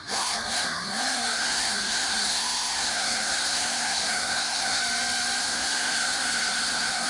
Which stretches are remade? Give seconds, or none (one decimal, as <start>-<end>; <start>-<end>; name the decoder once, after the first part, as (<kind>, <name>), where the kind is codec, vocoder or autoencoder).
0.0-4.8 (codec, SNAC); 5.4-7.1